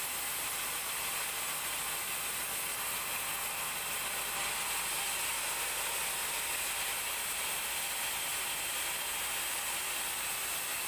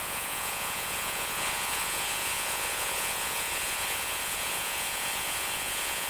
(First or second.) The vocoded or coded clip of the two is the second